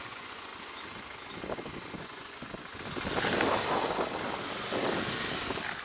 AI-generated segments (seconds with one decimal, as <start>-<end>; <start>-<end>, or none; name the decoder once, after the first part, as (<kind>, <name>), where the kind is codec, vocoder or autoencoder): 0.0-0.5 (vocoder, Vocos); 2.0-2.4